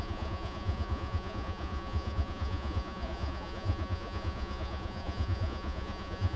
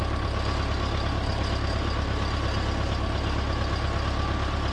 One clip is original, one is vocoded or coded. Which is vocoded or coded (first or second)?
first